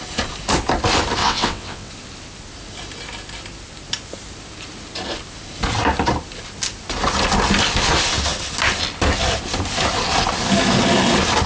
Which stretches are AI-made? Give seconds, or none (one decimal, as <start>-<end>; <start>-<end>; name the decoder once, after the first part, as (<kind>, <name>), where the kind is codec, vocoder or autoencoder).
1.2-1.9 (vocoder, WaveNeXt)